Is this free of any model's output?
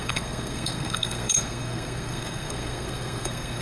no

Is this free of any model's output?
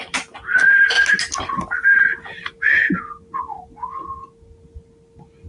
yes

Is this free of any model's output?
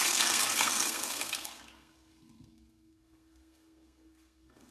no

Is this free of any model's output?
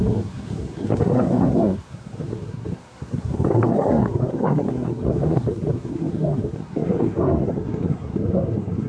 no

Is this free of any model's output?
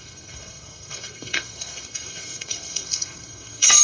no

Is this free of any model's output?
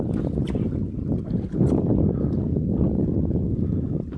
yes